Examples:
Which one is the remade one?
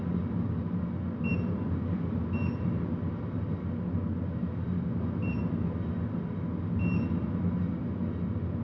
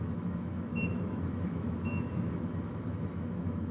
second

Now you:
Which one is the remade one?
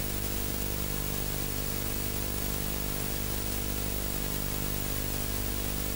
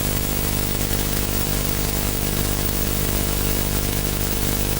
second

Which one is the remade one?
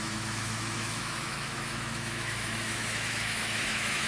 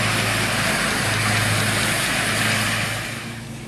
first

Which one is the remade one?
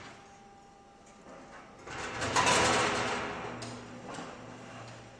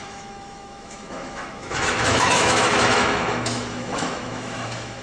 second